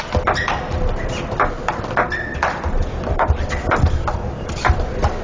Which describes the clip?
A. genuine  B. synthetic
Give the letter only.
A